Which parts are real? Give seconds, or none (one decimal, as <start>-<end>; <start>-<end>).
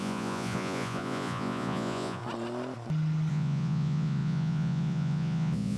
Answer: 2.2-3.3